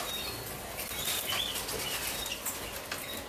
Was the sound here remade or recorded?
recorded